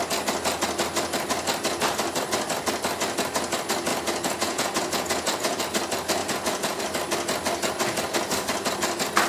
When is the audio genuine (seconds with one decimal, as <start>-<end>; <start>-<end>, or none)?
0.0-3.9; 5.6-6.2; 6.8-9.3